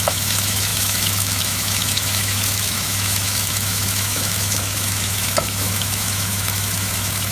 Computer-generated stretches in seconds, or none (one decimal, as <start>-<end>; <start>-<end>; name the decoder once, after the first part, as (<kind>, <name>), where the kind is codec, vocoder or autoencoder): 0.0-7.3 (autoencoder, DAC-VAE)